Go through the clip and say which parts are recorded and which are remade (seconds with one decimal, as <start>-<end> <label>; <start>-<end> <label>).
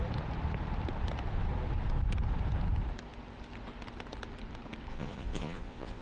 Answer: 0.0-4.9 recorded; 4.9-6.0 remade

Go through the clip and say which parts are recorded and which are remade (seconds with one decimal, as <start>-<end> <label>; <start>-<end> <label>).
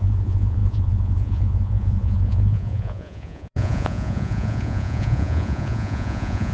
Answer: 0.0-6.5 remade